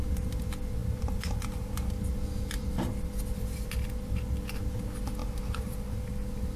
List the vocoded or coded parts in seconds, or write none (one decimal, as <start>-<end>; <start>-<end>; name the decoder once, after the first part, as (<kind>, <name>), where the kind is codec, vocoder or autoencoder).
none